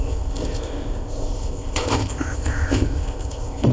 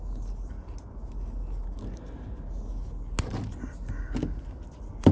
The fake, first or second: first